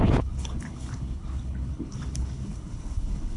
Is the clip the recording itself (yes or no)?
no